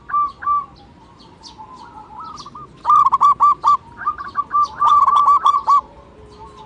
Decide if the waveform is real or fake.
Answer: real